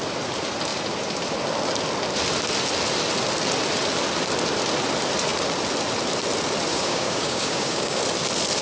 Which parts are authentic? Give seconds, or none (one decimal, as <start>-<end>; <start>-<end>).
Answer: 0.0-6.7; 8.0-8.6